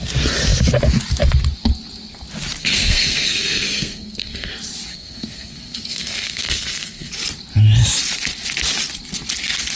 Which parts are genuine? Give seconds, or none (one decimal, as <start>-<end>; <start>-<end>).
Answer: 0.0-2.6; 4.5-4.9; 7.1-9.8

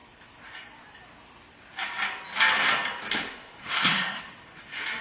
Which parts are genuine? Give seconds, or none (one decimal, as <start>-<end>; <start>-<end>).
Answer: 0.0-3.6; 4.2-5.0

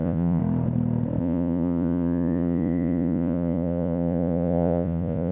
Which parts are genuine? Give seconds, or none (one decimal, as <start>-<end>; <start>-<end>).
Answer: 0.4-1.2